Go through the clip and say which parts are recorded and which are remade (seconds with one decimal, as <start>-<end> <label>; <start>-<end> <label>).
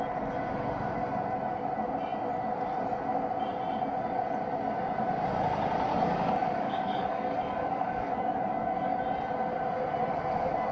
0.0-5.9 recorded; 5.9-9.0 remade; 9.0-10.7 recorded